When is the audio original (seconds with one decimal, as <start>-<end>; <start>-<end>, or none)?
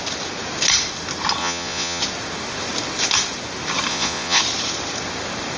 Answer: 0.0-1.4; 2.0-3.9; 4.4-5.6